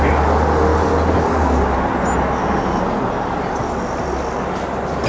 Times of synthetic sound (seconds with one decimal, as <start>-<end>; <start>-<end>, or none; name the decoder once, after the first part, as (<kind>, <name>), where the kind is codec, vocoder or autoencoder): none